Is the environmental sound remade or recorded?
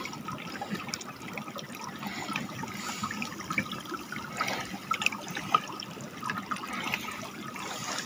recorded